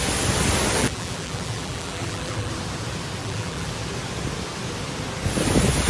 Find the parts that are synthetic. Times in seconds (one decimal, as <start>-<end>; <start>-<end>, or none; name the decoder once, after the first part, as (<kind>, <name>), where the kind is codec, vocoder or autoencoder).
0.8-2.5 (vocoder, BigVGAN v2); 3.2-3.7